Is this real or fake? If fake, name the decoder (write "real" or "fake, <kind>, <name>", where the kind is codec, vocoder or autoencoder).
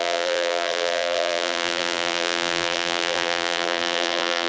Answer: fake, vocoder, BigVGAN v2